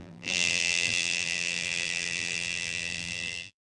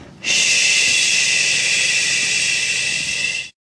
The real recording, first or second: second